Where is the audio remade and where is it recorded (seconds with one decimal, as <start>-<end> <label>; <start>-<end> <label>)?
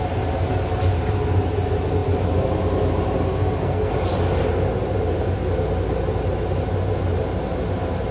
0.0-3.3 recorded; 3.3-3.9 remade; 3.9-8.1 recorded